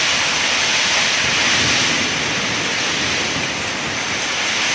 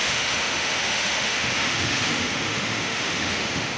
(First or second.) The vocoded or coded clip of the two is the second